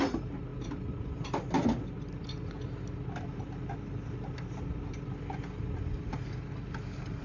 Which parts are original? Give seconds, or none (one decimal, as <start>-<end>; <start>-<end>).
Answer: 0.0-7.2